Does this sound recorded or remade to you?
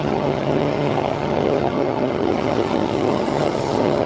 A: remade